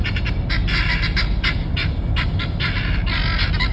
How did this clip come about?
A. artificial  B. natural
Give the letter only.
B